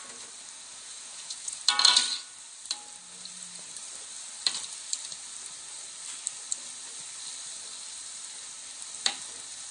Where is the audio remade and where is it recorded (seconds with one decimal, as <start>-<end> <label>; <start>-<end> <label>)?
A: 0.0-0.7 recorded; 0.7-1.6 remade; 1.6-9.7 recorded